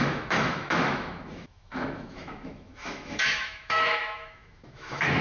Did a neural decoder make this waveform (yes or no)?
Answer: yes